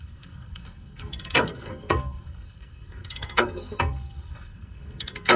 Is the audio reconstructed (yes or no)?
yes